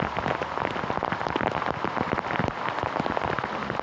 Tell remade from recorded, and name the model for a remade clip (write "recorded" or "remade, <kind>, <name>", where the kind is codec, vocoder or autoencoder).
recorded